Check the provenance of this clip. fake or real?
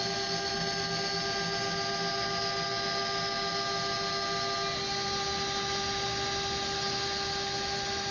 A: real